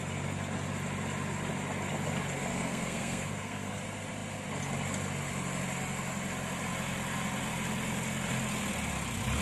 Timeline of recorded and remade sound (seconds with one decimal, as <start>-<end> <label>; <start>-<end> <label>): 0.0-2.5 recorded; 2.5-3.8 remade; 3.8-9.4 recorded